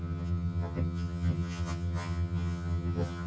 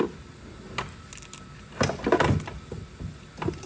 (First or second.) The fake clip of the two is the first